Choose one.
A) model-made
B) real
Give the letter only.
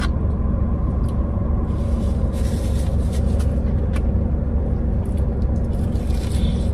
B